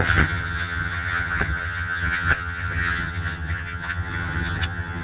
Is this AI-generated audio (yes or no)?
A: yes